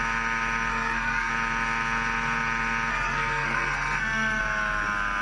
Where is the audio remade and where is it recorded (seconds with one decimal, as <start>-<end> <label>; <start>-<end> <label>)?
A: 0.0-0.7 recorded; 0.7-1.3 remade; 1.3-2.9 recorded; 2.9-4.4 remade; 4.4-5.2 recorded